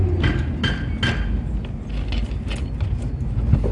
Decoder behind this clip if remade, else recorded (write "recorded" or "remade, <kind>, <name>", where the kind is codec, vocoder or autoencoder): recorded